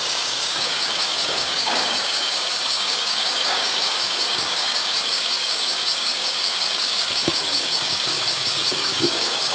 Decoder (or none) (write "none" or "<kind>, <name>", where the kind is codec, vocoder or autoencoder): codec, DAC